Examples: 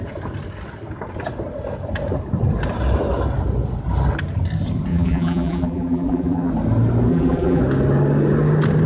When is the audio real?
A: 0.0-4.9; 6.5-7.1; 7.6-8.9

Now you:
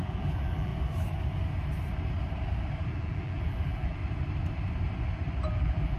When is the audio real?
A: 0.7-2.7; 4.0-5.5

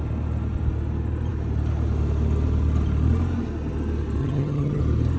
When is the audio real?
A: 0.0-4.2; 4.8-5.2

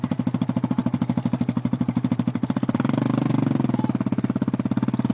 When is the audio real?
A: 3.3-5.1

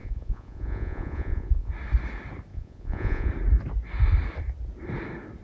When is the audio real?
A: 1.7-2.5; 3.3-5.4

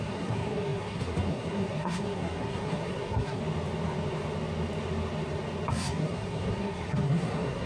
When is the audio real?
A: 3.4-5.7